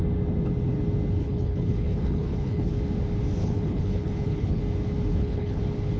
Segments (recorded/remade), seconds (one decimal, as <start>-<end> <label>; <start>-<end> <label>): 0.0-1.2 recorded; 1.2-2.8 remade; 2.8-3.4 recorded; 3.4-4.6 remade; 4.6-5.1 recorded; 5.1-5.6 remade; 5.6-6.0 recorded